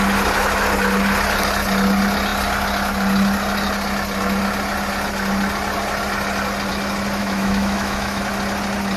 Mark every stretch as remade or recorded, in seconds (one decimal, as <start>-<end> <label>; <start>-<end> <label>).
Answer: 0.0-7.2 recorded; 7.2-8.2 remade; 8.2-9.0 recorded